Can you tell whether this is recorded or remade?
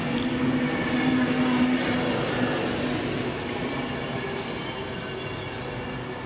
recorded